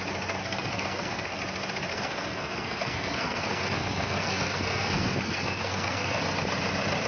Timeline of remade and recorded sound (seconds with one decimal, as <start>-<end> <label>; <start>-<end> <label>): 0.0-0.4 recorded; 0.4-1.4 remade; 1.4-1.9 recorded; 1.9-6.2 remade; 6.2-7.1 recorded